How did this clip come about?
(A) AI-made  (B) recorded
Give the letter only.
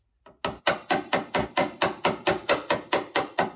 B